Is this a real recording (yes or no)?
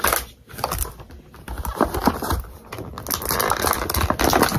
yes